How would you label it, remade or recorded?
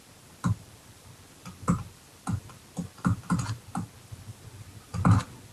remade